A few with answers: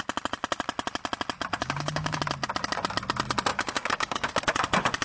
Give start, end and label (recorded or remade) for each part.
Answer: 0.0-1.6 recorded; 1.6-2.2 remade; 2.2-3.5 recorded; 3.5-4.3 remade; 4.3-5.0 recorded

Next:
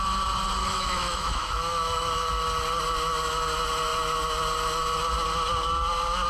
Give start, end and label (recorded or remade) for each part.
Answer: 0.0-0.6 recorded; 0.6-2.3 remade; 2.3-6.3 recorded